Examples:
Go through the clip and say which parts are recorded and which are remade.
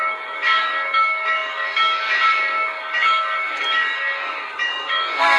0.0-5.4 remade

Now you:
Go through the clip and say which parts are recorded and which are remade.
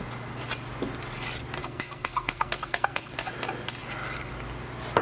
0.0-1.6 recorded; 1.6-3.1 remade; 3.1-5.0 recorded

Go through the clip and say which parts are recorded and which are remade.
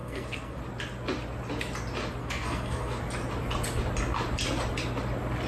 0.0-0.6 remade; 0.6-2.2 recorded; 2.2-3.0 remade; 3.0-5.5 recorded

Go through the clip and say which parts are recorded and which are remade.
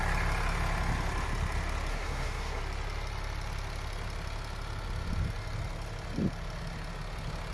0.0-1.9 recorded; 1.9-2.6 remade; 2.6-7.5 recorded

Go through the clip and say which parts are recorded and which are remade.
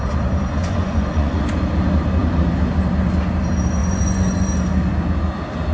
0.0-0.6 recorded; 0.6-1.4 remade; 1.4-3.8 recorded; 3.8-4.5 remade; 4.5-5.7 recorded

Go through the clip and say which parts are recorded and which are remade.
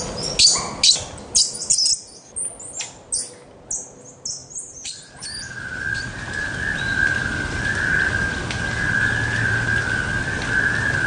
0.0-4.4 recorded; 4.4-6.6 remade; 6.6-11.1 recorded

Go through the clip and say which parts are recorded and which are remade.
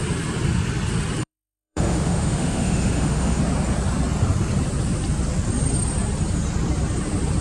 0.0-1.2 recorded; 1.2-3.4 remade; 3.4-7.4 recorded